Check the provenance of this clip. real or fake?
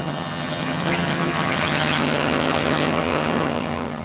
fake